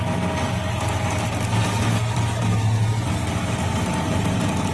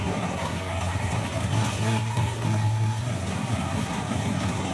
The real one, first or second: first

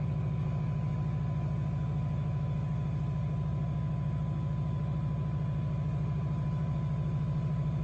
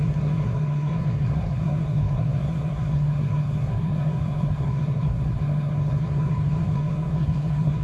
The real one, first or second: first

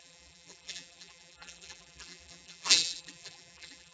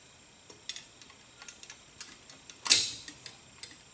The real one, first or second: second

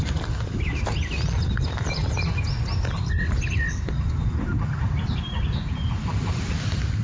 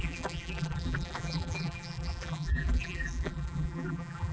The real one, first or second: first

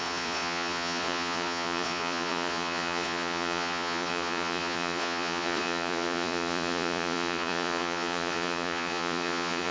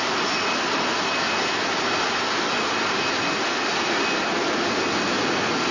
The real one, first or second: second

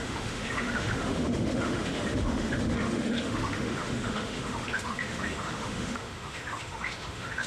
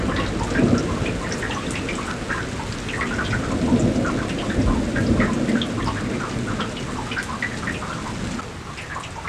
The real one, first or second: second